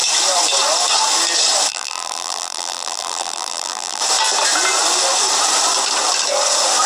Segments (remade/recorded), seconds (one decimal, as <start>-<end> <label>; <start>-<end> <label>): 0.0-1.7 recorded; 1.7-4.0 remade; 4.0-6.9 recorded